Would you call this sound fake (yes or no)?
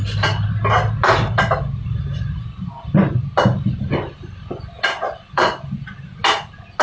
no